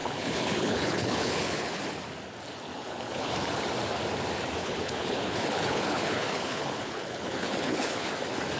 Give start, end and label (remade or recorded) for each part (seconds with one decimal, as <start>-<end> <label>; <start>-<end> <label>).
0.0-1.8 remade; 1.8-2.7 recorded; 2.7-3.3 remade; 3.3-4.6 recorded; 4.6-8.1 remade; 8.1-8.6 recorded